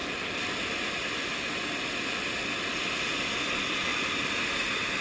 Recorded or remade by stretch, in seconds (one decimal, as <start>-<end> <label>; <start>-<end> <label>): 0.0-3.9 recorded; 3.9-5.0 remade